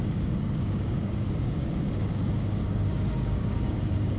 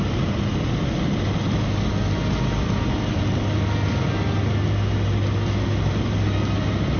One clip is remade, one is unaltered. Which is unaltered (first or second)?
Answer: second